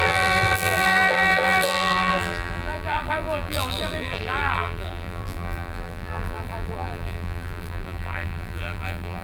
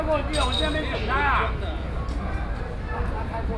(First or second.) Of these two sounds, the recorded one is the second